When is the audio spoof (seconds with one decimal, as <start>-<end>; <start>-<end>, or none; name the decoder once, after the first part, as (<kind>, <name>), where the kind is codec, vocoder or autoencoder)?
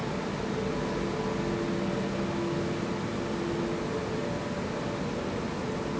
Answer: none